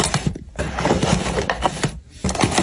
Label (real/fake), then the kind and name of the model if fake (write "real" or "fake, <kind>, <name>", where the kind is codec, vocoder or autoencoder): real